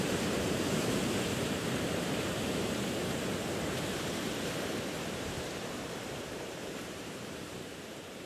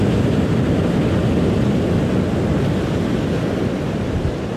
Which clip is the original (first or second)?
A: second